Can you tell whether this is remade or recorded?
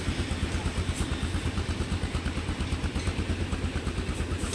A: recorded